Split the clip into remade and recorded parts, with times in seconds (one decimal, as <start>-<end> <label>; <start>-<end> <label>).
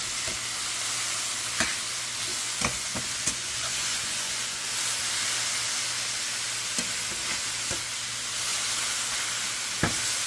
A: 0.0-2.3 recorded; 2.3-4.7 remade; 4.7-10.3 recorded